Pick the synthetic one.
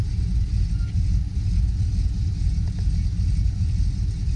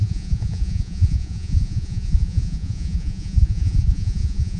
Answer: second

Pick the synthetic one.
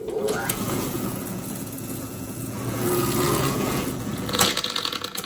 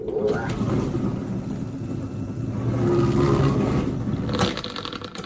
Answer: first